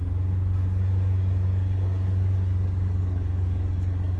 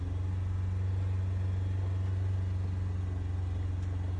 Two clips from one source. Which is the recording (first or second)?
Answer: second